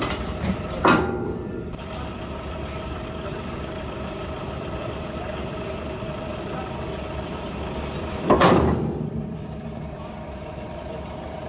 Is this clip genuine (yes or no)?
no